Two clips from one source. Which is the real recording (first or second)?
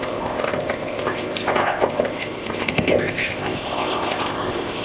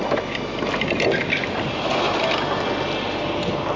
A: second